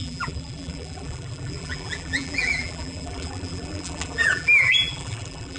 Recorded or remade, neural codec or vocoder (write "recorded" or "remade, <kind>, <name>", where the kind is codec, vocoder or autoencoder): remade, vocoder, BigVGAN v2